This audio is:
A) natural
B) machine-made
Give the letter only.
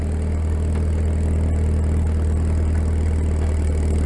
A